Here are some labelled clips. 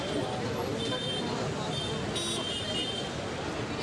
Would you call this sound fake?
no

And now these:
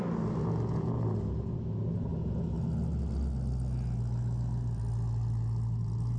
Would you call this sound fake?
no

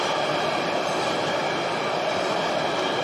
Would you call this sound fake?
no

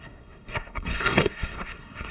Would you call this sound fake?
yes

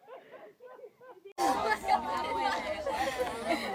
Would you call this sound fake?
no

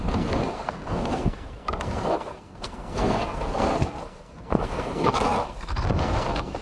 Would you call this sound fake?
yes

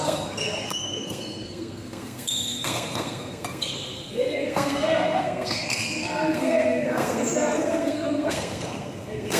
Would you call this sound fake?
yes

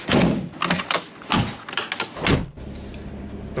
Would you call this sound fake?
no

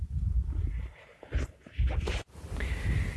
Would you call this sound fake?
no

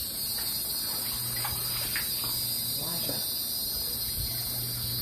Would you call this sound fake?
no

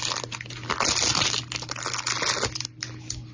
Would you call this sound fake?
no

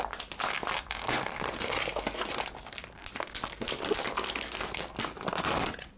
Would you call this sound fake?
no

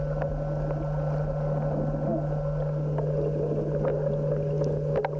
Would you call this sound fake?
no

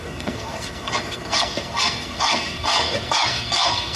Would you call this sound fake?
yes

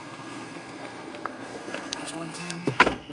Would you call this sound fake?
yes